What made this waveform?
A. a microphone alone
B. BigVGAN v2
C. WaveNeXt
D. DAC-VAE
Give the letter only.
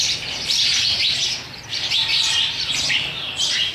B